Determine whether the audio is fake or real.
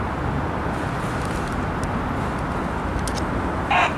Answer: real